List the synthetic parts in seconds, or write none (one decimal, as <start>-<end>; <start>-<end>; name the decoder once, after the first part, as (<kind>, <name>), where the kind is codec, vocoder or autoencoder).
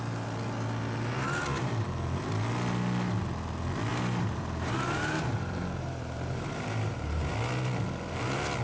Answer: 3.9-7.3 (vocoder, BigVGAN v2)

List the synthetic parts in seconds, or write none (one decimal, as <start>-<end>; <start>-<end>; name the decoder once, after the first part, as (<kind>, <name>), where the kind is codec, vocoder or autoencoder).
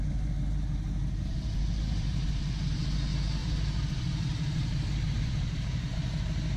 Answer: 1.2-2.4 (vocoder, BigVGAN v2); 3.4-5.9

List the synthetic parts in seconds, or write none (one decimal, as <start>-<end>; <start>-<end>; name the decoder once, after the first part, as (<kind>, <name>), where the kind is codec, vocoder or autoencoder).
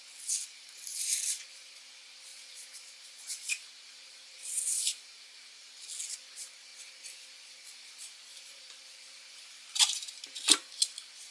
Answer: 0.4-1.7 (vocoder, BigVGAN v2); 2.3-5.9; 8.3-10.2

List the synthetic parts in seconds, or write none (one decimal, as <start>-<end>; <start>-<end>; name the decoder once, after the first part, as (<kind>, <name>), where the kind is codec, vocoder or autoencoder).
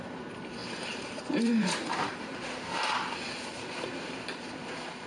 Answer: 0.0-5.1 (vocoder, BigVGAN v2)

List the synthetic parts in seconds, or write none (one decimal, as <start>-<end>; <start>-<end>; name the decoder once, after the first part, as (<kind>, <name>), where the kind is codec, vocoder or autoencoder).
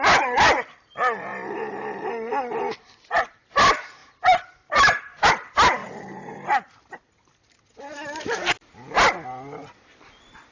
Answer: 1.3-2.3 (vocoder, BigVGAN v2); 4.0-5.3; 5.8-6.3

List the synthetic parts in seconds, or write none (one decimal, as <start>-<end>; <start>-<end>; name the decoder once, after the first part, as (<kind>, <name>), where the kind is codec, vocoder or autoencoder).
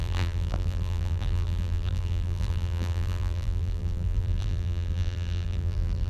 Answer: 0.0-6.1 (vocoder, BigVGAN v2)